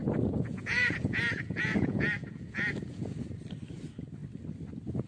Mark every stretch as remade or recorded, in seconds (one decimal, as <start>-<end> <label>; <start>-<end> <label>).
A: 0.0-3.1 remade; 3.1-5.1 recorded